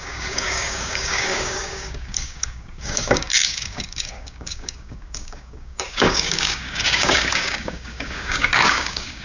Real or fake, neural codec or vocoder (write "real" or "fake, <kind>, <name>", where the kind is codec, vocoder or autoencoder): fake, codec, DAC